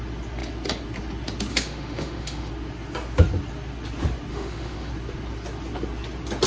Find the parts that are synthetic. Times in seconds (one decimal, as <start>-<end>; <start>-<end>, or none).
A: 1.5-2.5; 4.3-4.9